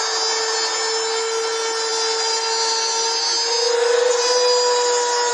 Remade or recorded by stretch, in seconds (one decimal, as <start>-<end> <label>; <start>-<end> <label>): 0.0-5.3 recorded